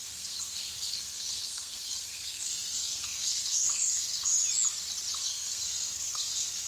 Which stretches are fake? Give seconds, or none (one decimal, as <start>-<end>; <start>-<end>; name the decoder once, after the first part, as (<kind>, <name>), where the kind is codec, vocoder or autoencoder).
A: 0.0-4.3 (codec, SNAC); 5.2-6.7